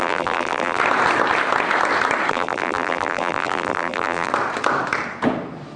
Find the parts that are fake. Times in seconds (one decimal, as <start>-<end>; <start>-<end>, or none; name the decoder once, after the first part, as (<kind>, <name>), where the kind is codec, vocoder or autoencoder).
0.0-0.8 (vocoder, BigVGAN v2); 2.3-4.3

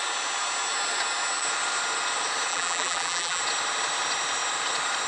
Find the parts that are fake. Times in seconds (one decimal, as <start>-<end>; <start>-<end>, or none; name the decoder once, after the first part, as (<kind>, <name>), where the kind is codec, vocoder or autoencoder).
2.5-3.4 (vocoder, BigVGAN v2)

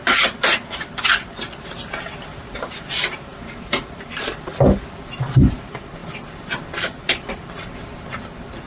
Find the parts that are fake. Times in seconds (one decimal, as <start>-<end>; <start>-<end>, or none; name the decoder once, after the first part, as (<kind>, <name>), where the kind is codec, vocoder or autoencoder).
3.3-4.2 (vocoder, BigVGAN v2)

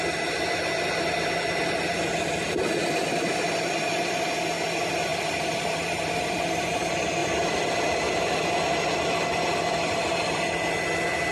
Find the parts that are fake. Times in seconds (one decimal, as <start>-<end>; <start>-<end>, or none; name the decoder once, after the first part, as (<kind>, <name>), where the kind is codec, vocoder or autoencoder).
2.8-3.3 (vocoder, BigVGAN v2); 5.1-6.8

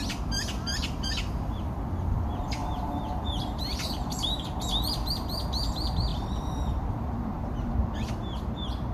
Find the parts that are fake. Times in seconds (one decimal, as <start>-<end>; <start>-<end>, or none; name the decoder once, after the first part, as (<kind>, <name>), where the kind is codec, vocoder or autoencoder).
2.6-4.7 (vocoder, BigVGAN v2); 6.1-8.1

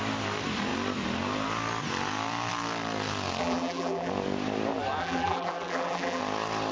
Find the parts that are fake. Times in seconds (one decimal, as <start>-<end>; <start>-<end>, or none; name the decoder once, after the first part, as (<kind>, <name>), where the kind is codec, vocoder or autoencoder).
3.4-4.1 (vocoder, BigVGAN v2); 5.0-6.2

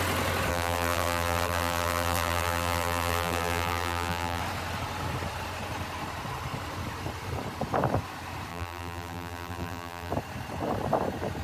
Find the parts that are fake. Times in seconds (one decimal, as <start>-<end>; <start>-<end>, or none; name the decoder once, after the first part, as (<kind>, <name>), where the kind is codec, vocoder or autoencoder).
0.5-4.4 (vocoder, BigVGAN v2); 8.5-10.1